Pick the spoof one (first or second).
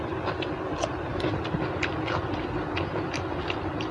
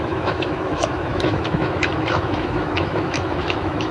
second